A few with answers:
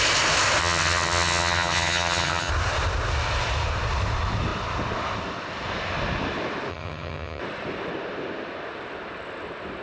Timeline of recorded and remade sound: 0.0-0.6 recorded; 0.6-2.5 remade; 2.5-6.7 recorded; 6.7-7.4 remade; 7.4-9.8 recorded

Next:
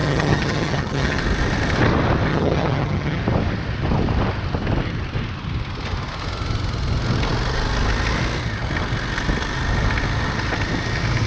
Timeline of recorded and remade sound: 0.0-1.2 remade; 1.2-2.3 recorded; 2.3-3.2 remade; 3.2-11.3 recorded